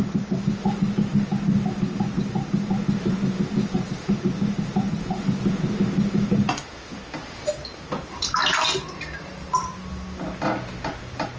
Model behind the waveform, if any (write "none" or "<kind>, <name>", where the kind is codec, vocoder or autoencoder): none